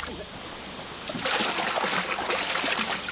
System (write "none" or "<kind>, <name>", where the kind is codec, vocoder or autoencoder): none